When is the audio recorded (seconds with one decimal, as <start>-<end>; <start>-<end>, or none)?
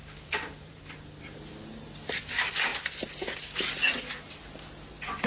1.5-5.3